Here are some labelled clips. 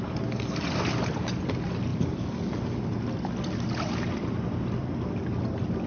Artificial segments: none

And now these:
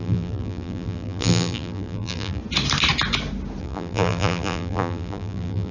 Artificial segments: 0.0-2.4 (vocoder, BigVGAN v2); 3.6-5.7

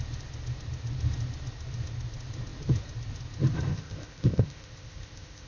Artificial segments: 3.7-5.5 (codec, ZipCodec)

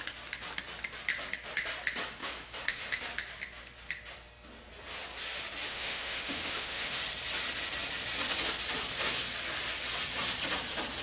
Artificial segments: 2.2-3.0 (autoencoder, DAC-VAE); 5.7-7.0

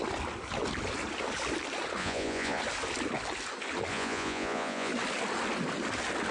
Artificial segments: 2.0-2.6 (vocoder, Vocos); 3.9-4.9

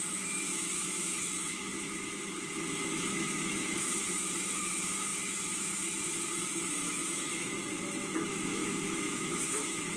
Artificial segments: 0.0-10.0 (autoencoder, DAC-VAE)

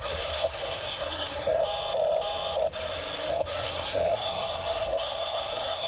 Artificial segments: 0.0-1.6 (codec, SNAC); 3.3-5.9